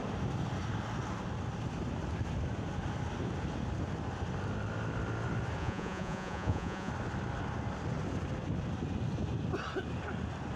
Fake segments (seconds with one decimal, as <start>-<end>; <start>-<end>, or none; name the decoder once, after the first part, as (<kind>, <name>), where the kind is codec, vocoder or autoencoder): 5.6-6.9 (vocoder, Vocos)